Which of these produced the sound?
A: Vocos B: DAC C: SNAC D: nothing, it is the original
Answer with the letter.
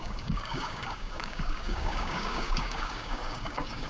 B